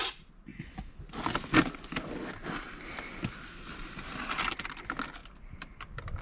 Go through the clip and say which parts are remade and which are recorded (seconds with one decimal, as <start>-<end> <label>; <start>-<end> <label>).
0.0-6.2 recorded